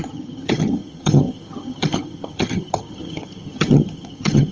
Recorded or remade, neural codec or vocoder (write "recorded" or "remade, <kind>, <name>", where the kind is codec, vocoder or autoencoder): remade, vocoder, HiFi-GAN